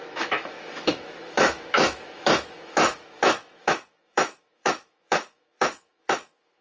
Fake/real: fake